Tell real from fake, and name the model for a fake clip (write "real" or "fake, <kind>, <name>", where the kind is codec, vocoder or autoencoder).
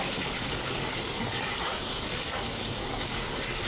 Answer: fake, codec, DAC